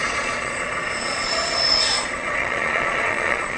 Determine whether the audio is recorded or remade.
remade